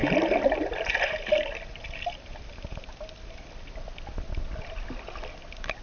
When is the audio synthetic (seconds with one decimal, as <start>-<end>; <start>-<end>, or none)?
none